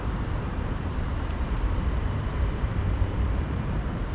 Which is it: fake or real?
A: fake